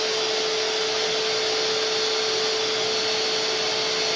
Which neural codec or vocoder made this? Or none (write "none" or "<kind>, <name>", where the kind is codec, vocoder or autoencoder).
none